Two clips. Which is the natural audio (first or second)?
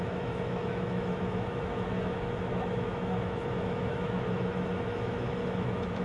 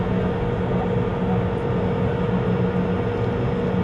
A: second